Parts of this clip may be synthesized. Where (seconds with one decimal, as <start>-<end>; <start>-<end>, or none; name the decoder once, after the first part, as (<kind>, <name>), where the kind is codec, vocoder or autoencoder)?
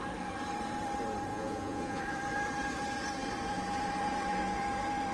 1.3-2.0 (vocoder, Vocos)